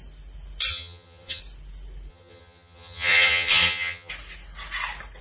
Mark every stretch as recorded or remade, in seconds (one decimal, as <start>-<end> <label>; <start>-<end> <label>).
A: 0.0-0.7 recorded; 0.7-1.4 remade; 1.4-2.1 recorded; 2.1-4.1 remade; 4.1-5.2 recorded